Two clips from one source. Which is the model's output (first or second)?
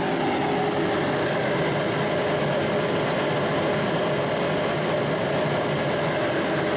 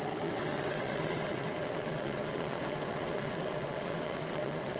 second